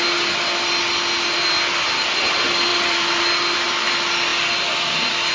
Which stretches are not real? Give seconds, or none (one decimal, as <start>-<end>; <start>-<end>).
2.7-3.2